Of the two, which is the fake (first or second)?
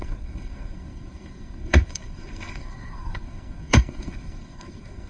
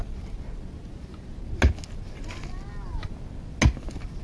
first